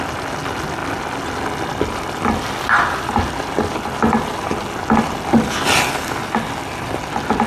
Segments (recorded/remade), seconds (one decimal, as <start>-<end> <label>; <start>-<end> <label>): 0.0-7.5 recorded